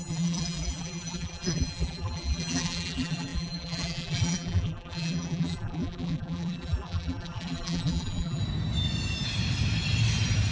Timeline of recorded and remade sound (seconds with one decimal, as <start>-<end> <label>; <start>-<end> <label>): 0.0-8.4 remade; 8.4-10.5 recorded